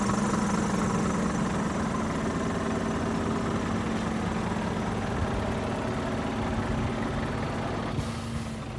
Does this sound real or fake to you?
real